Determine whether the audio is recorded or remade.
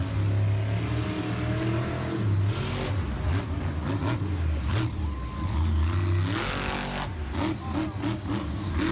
recorded